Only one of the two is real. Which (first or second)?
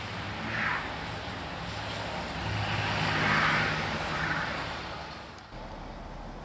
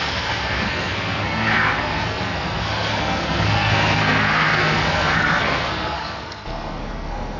first